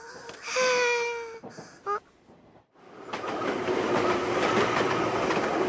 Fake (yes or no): no